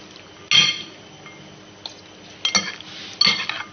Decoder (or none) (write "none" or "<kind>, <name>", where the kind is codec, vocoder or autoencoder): none